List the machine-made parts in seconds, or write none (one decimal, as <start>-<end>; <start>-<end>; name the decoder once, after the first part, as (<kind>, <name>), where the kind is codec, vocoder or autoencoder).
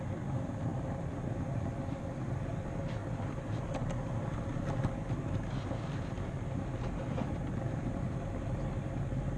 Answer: 3.0-3.6 (vocoder, BigVGAN v2)